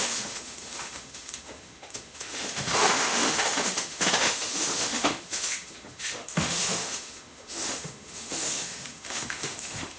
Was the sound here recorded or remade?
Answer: remade